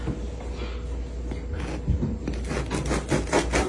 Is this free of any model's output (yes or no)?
yes